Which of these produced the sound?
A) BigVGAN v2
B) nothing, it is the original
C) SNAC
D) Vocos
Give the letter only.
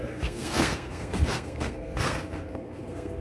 C